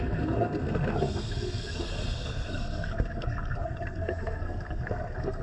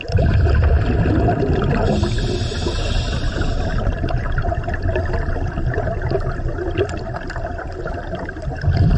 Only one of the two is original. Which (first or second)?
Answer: second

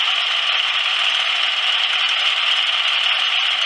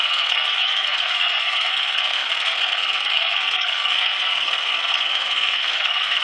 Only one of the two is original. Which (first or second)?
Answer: first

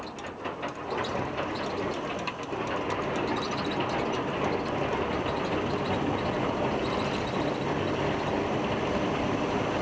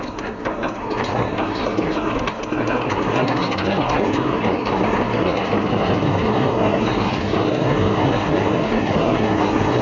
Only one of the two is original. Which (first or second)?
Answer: first